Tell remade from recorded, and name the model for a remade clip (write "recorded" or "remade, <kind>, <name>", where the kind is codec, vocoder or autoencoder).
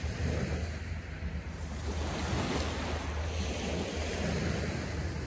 recorded